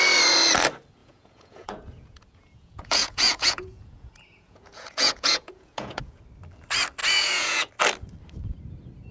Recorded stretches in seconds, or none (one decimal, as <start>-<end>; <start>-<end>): 0.0-1.0; 6.2-7.0; 7.7-9.1